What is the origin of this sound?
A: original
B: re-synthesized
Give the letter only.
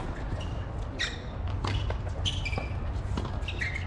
A